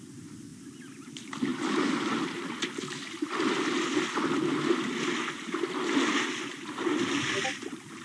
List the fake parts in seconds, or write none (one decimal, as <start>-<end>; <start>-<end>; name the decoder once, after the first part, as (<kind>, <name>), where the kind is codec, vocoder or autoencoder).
none